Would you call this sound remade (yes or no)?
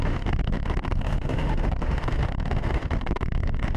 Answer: yes